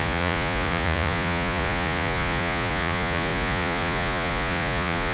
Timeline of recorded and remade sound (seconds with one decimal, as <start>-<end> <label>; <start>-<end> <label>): 0.0-5.1 remade